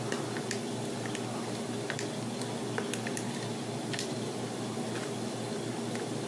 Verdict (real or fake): real